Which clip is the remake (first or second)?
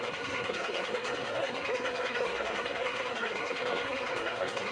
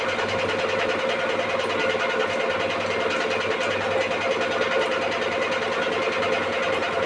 first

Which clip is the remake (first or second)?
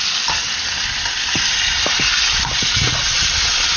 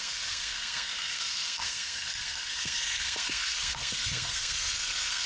second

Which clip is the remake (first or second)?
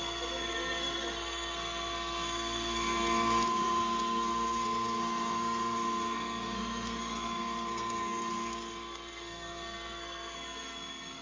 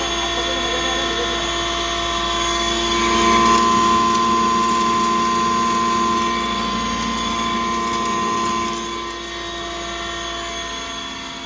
first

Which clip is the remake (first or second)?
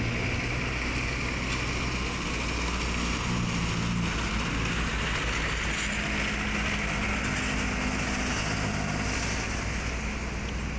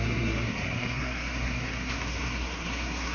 second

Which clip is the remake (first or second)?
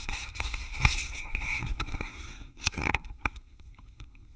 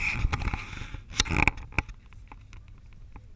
first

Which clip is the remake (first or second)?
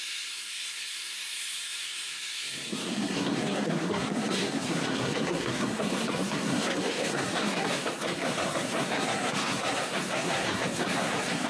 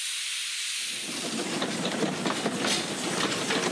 first